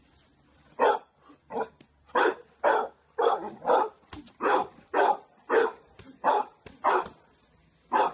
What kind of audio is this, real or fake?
real